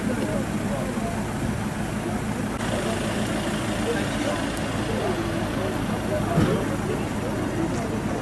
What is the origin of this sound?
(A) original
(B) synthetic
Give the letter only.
A